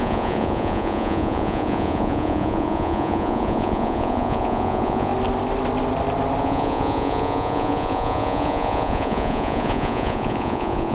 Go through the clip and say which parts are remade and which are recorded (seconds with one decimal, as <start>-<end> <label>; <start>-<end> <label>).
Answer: 0.0-5.1 remade; 5.1-6.4 recorded; 6.4-10.9 remade